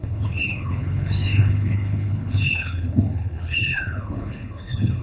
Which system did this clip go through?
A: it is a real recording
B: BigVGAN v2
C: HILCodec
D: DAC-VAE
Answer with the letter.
C